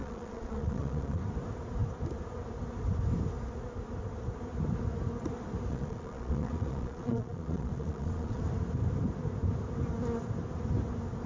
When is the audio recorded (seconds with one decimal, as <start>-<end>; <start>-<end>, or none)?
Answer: 1.2-5.7; 8.4-11.3